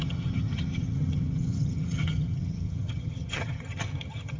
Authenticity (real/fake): fake